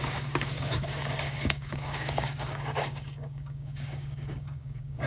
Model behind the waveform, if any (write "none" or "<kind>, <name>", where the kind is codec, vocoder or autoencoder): codec, DAC